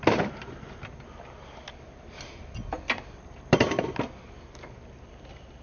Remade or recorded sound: recorded